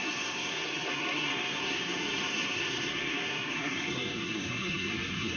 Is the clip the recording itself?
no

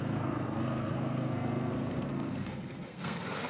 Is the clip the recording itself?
no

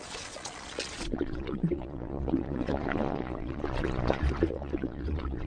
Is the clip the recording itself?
no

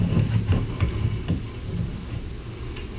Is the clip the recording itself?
yes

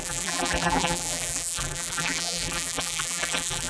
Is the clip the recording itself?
no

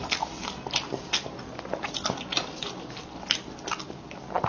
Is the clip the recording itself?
yes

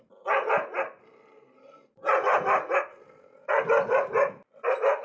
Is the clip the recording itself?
yes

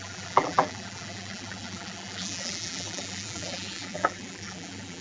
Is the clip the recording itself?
no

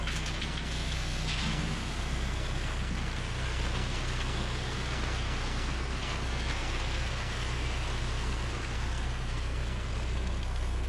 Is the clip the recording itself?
no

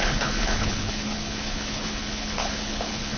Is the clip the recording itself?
no